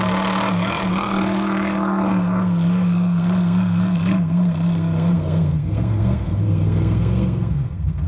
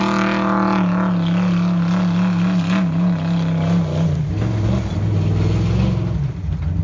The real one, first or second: second